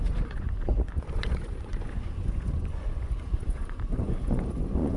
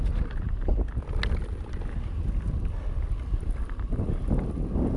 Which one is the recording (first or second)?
second